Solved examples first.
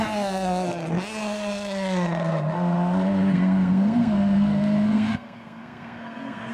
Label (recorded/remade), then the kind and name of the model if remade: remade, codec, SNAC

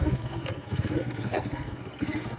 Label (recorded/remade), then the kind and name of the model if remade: remade, codec, SNAC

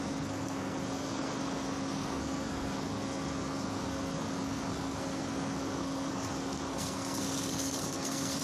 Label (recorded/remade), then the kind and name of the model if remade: remade, codec, SNAC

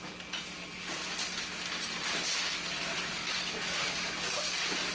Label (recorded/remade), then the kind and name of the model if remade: recorded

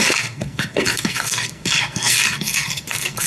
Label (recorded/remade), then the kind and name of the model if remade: remade, codec, SNAC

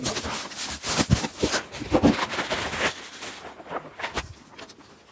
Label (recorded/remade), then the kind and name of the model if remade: recorded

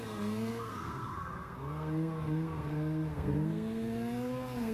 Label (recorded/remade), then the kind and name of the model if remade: remade, codec, SNAC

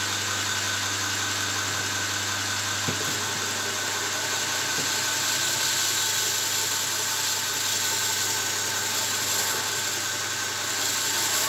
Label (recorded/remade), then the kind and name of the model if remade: recorded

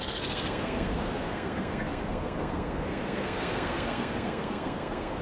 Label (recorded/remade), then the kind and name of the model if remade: remade, codec, SNAC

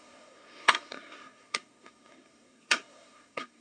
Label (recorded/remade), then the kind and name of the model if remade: remade, codec, SNAC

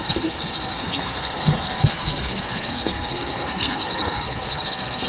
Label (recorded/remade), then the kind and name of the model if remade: remade, codec, SNAC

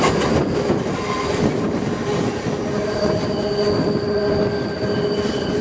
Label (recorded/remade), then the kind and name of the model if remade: recorded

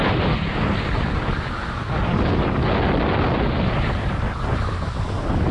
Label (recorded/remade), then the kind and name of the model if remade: recorded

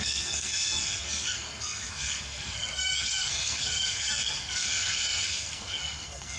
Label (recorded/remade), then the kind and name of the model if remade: remade, codec, SNAC